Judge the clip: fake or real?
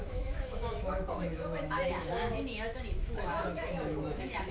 fake